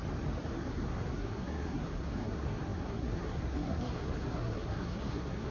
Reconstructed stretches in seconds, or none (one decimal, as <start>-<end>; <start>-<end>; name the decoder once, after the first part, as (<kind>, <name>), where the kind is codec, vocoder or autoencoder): 0.6-5.5 (codec, SNAC)